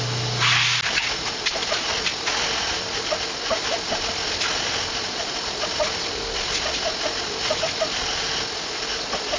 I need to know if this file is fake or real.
real